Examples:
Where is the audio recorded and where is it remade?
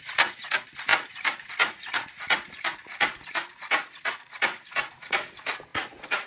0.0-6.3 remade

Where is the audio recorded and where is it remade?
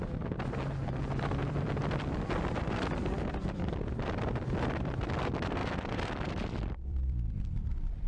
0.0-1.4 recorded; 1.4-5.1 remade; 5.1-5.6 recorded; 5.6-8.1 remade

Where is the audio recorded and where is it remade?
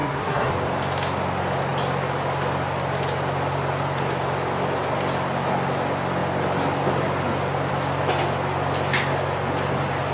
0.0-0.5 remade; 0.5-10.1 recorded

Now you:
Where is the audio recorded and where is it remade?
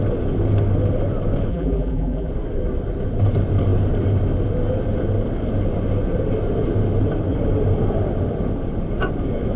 0.0-1.5 recorded; 1.5-2.3 remade; 2.3-9.6 recorded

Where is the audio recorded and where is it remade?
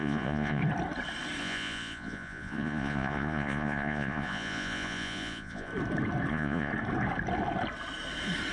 0.0-0.6 remade; 0.6-1.4 recorded; 1.4-5.7 remade; 5.7-6.3 recorded; 6.3-6.7 remade; 6.7-8.5 recorded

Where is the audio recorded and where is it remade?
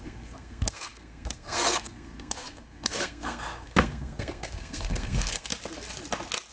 0.0-5.5 remade; 5.5-6.5 recorded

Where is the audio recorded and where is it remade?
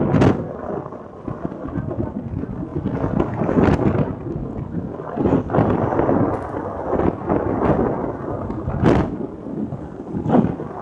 0.0-2.7 recorded; 2.7-3.7 remade; 3.7-10.8 recorded